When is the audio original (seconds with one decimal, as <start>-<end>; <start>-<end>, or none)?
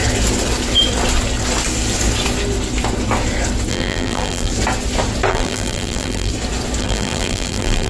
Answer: 0.0-3.7; 4.5-5.3; 6.3-6.8